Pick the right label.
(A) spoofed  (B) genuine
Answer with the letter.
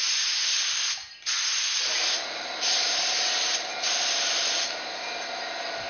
B